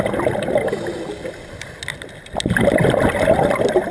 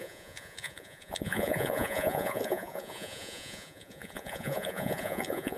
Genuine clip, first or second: first